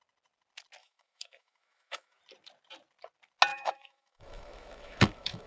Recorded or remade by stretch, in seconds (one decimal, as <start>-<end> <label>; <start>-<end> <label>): 0.0-0.8 recorded; 0.8-2.2 remade; 2.2-3.5 recorded; 3.5-5.5 remade